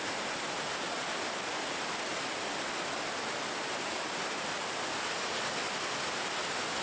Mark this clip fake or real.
real